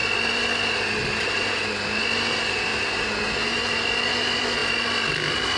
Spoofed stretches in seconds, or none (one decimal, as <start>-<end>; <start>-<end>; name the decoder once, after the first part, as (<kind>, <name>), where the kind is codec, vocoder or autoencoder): none